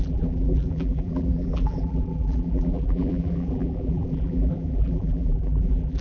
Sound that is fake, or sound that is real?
fake